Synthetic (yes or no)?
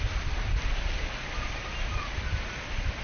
no